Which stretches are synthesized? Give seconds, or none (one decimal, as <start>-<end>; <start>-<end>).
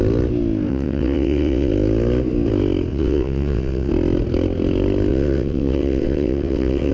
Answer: 0.7-1.7; 2.9-3.9; 5.1-6.9